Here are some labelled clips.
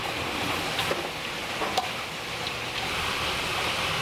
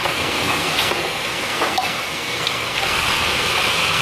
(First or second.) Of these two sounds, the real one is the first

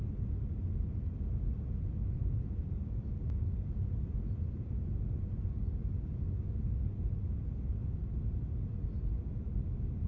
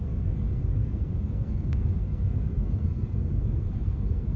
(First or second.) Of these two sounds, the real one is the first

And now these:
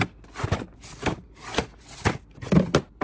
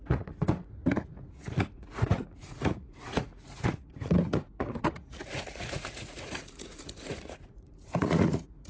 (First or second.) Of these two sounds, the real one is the first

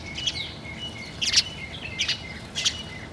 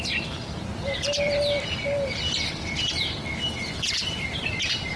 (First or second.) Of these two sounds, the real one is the first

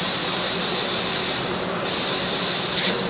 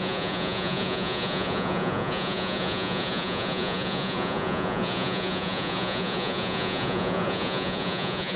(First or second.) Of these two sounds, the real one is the first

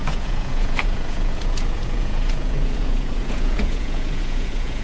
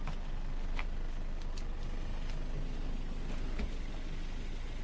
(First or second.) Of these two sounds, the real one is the second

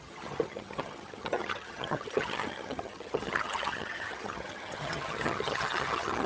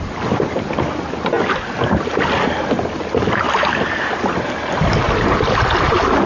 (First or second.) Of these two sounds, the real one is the second